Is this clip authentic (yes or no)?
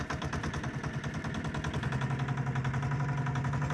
yes